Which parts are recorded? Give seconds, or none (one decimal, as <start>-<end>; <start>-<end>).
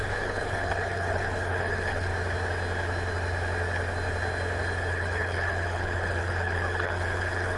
2.1-4.9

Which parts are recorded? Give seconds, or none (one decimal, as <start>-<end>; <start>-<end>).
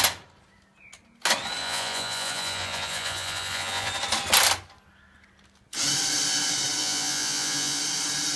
0.0-1.6; 3.9-6.8; 7.8-8.4